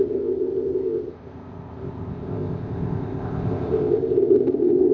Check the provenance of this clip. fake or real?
fake